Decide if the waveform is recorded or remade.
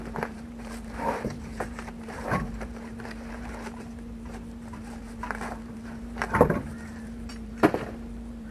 remade